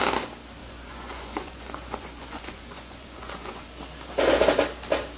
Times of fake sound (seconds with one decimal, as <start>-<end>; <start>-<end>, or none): 0.6-3.7